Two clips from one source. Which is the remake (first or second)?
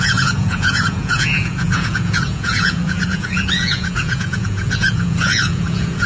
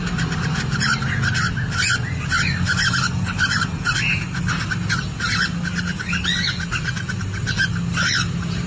first